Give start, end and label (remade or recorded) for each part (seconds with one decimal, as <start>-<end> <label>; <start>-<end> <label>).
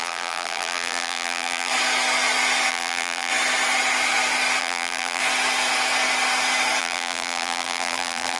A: 0.0-1.7 remade; 1.7-2.7 recorded; 2.7-3.3 remade; 3.3-4.6 recorded; 4.6-5.2 remade; 5.2-6.8 recorded; 6.8-8.4 remade